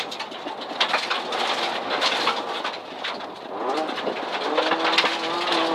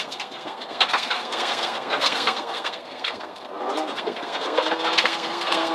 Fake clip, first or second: second